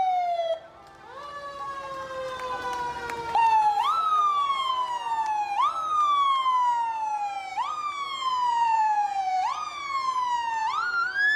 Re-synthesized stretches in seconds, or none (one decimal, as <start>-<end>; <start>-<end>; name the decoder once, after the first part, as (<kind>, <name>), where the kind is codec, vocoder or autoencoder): 8.5-9.8 (vocoder, Vocos)